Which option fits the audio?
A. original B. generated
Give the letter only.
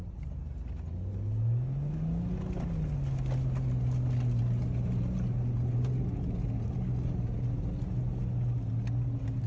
A